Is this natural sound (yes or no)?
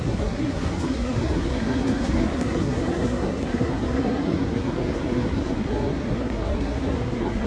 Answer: no